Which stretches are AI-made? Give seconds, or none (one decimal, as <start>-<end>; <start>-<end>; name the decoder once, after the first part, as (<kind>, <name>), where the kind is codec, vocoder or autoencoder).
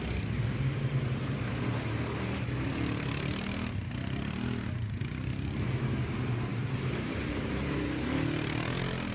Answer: none